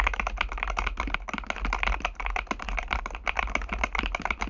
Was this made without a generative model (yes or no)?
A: yes